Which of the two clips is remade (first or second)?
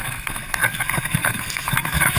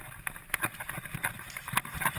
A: first